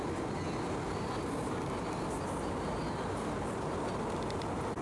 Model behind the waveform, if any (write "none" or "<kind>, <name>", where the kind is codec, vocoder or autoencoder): none